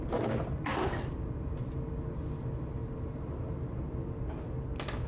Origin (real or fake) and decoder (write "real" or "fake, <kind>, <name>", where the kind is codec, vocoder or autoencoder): real